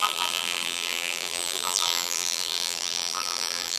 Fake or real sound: fake